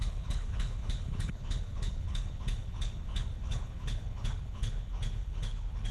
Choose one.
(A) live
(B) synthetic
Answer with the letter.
B